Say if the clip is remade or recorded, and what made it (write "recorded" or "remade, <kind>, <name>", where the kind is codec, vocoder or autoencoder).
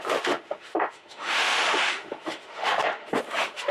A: remade, autoencoder, DAC-VAE